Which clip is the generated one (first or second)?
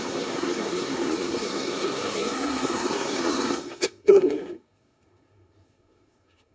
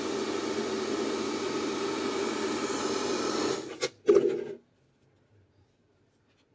first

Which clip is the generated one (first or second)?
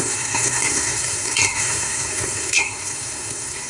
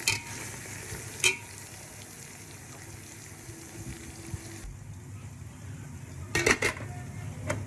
first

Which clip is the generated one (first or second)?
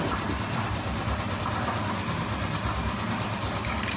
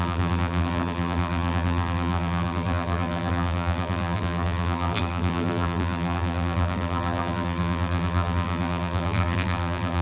second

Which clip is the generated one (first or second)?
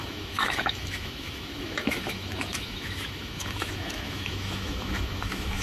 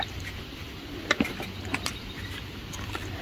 first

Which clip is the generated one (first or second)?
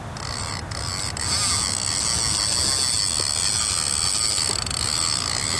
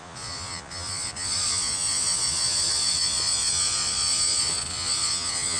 second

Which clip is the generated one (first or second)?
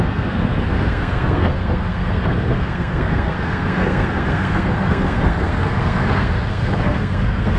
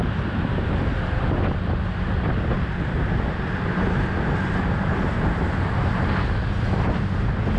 first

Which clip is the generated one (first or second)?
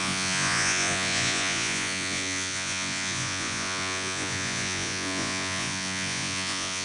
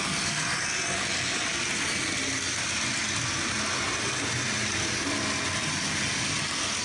first